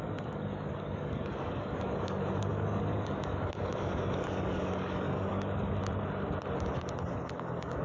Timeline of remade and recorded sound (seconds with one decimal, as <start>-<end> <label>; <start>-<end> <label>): 0.0-5.8 remade; 5.8-7.1 recorded; 7.1-7.8 remade